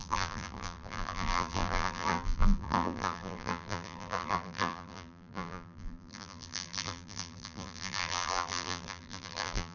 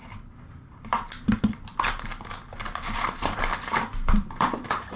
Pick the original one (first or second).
second